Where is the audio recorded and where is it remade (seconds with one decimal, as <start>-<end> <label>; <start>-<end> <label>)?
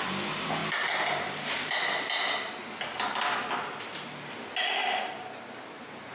0.0-6.1 recorded